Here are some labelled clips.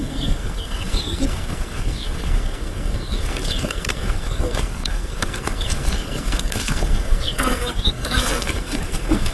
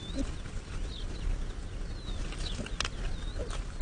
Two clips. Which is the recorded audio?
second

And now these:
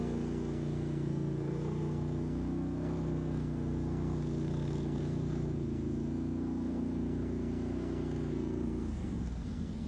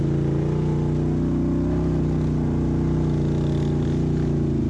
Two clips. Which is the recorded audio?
second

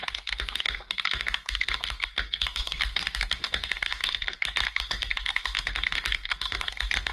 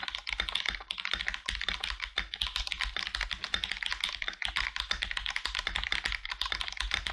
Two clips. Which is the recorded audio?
second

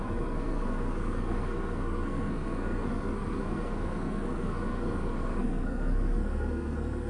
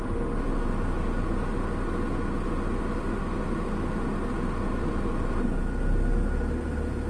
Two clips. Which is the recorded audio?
second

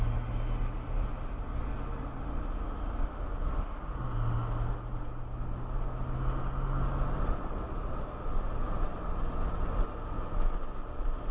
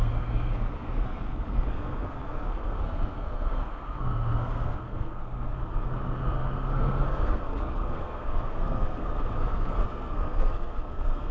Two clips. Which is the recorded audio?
first